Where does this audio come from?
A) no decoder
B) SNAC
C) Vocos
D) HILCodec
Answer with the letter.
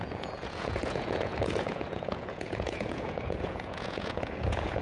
C